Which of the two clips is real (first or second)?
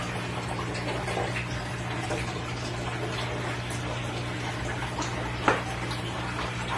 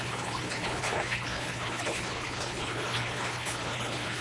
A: first